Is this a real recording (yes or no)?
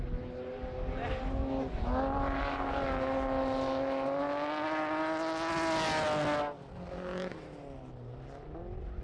yes